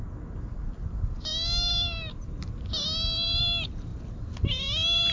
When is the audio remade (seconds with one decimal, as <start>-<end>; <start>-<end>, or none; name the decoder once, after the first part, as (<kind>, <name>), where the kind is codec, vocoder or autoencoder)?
none